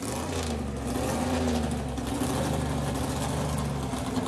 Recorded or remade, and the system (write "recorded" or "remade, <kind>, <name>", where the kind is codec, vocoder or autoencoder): recorded